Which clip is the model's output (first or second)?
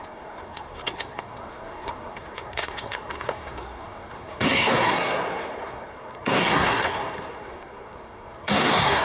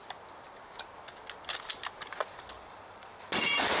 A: first